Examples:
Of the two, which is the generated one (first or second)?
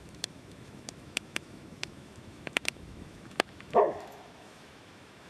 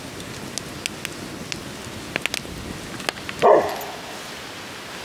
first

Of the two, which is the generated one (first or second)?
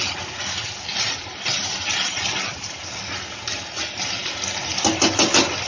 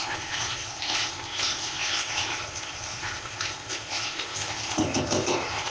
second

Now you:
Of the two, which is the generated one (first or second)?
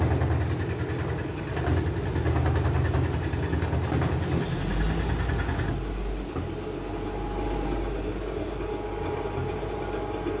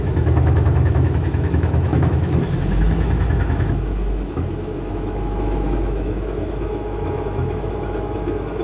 second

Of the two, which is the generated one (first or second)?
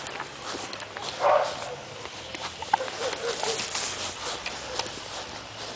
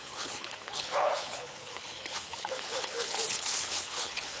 second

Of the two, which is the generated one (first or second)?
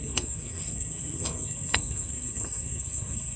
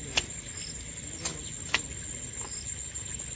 first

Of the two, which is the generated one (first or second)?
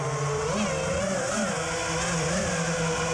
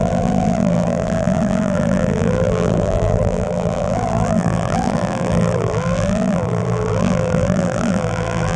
second